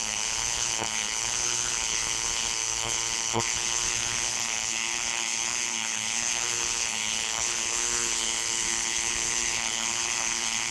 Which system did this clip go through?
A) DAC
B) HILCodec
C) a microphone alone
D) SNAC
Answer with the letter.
B